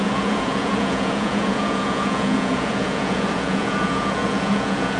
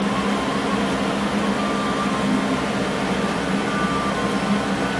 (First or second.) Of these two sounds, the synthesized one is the first